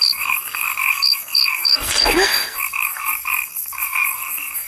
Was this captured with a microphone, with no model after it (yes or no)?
no